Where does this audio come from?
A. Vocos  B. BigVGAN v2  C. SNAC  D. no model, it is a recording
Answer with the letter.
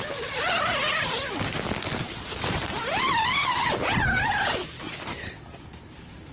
D